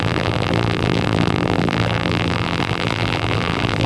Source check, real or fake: fake